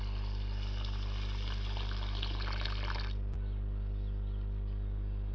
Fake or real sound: real